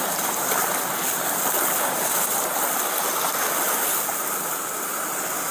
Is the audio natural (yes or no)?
yes